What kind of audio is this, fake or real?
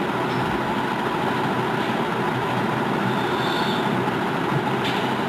real